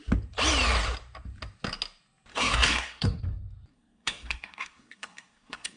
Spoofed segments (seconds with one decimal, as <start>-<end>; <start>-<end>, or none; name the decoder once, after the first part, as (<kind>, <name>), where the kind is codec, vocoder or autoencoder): 2.3-3.2 (codec, SNAC); 3.7-5.8